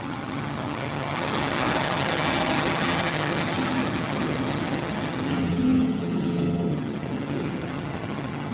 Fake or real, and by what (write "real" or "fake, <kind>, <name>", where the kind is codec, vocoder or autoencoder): fake, vocoder, HiFi-GAN